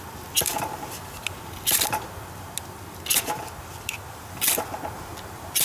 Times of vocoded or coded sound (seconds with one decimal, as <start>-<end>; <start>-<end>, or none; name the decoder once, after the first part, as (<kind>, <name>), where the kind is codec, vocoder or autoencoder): none